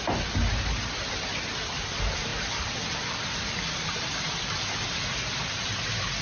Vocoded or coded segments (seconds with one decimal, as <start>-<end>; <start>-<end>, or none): 2.3-6.2